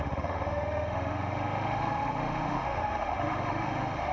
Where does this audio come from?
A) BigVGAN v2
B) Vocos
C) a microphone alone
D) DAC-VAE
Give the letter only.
D